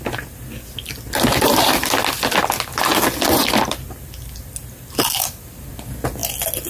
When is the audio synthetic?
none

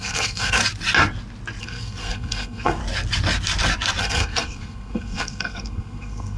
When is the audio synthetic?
0.0-0.6; 1.6-2.8; 4.0-6.4

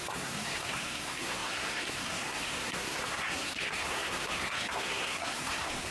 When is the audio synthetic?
0.0-5.9

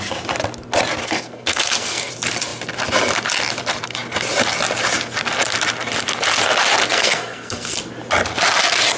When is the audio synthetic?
1.0-2.1; 6.8-7.8

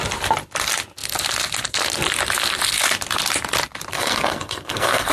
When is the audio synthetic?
3.9-5.1

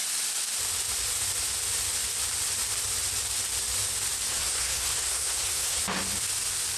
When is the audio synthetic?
4.3-5.8

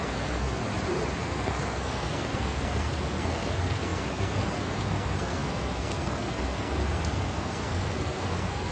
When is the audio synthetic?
0.0-0.6; 1.2-8.7

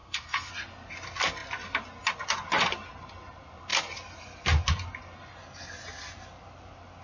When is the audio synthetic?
0.0-0.5